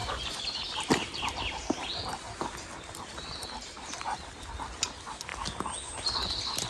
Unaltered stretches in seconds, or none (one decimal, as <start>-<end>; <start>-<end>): 4.0-6.7